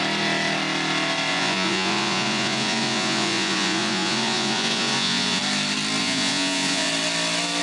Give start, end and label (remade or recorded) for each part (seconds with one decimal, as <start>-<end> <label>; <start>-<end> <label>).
0.0-1.3 recorded; 1.3-5.4 remade; 5.4-6.0 recorded; 6.0-6.9 remade; 6.9-7.6 recorded